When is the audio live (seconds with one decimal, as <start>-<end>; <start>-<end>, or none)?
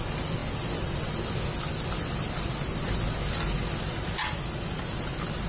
0.0-5.5